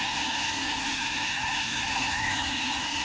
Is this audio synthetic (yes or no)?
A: yes